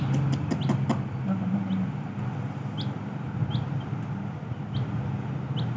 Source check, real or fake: real